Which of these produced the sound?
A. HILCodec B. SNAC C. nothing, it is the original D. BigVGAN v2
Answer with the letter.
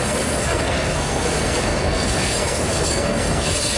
B